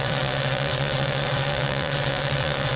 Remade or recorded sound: remade